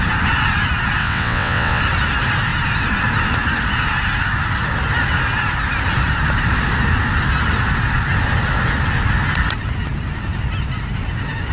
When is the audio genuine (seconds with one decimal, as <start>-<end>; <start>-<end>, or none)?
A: 0.0-1.0; 1.8-11.5